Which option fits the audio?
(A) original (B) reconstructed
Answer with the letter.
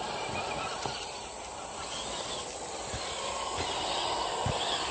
A